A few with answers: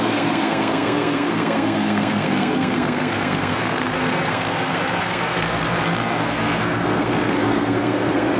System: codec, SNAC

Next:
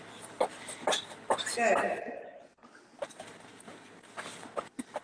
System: none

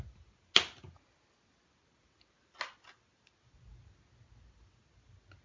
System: none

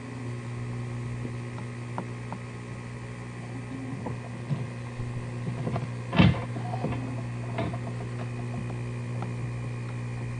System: none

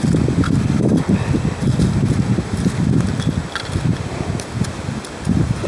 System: none